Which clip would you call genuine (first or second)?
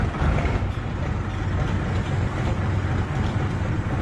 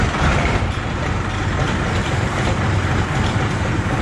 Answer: first